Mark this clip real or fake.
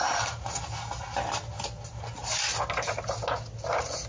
real